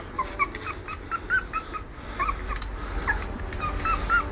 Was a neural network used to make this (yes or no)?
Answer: no